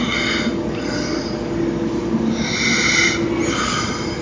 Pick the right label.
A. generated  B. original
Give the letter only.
B